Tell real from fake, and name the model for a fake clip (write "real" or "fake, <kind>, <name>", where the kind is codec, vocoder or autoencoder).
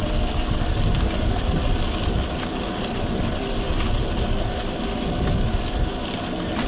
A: real